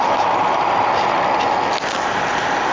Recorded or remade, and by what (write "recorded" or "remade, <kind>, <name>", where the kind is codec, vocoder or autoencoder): recorded